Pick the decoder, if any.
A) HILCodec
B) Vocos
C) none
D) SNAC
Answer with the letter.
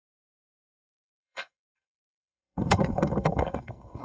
D